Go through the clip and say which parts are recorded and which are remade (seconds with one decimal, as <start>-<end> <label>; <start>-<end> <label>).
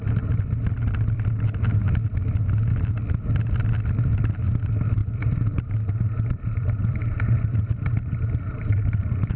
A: 0.0-5.0 recorded; 5.0-9.4 remade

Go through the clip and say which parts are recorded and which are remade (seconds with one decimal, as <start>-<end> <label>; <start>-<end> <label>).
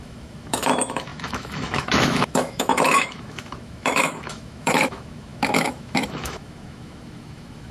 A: 0.0-7.7 remade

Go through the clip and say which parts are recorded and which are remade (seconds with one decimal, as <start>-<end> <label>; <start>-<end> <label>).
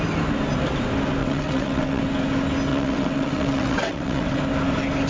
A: 0.0-1.2 recorded; 1.2-2.0 remade; 2.0-2.7 recorded; 2.7-4.4 remade; 4.4-5.1 recorded